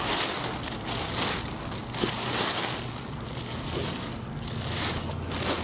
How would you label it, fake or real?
real